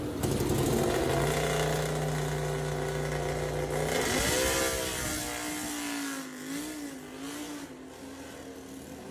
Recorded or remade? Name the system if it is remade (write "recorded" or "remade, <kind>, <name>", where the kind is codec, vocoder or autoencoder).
recorded